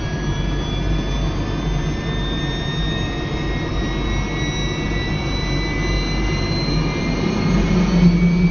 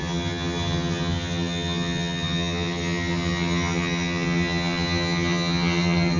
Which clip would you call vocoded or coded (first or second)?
second